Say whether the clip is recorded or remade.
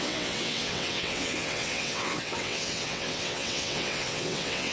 remade